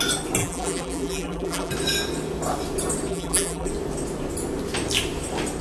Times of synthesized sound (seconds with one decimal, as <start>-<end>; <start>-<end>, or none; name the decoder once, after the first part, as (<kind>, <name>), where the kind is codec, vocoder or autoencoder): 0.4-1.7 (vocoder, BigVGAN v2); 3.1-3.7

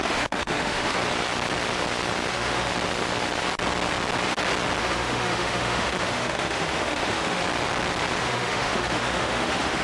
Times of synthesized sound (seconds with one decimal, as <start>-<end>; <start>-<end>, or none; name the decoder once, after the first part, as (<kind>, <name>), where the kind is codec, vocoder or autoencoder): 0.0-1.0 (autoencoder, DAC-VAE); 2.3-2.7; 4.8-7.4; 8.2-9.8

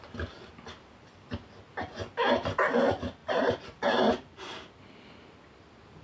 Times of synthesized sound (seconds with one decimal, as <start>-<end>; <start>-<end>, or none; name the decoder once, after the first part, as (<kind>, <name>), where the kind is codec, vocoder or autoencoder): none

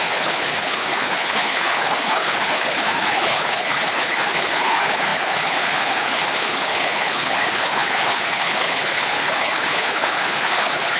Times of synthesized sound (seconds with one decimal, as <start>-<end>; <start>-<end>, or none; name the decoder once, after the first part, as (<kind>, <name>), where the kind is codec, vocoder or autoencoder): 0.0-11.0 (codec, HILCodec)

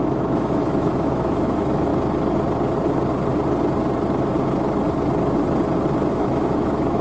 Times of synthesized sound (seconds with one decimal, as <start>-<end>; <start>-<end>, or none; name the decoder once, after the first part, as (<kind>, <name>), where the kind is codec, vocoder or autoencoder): 0.0-1.9 (autoencoder, DAC-VAE); 6.1-7.0